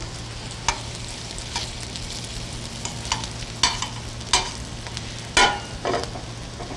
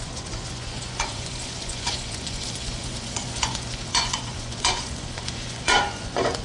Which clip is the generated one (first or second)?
second